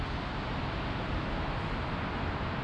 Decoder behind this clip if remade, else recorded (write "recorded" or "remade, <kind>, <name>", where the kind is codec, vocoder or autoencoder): recorded